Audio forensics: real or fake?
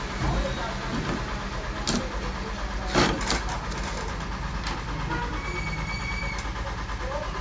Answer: real